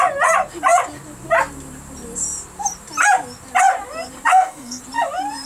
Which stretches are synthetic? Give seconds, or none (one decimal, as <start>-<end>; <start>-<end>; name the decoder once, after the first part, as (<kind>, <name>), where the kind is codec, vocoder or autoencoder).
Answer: 4.3-4.8 (codec, SNAC)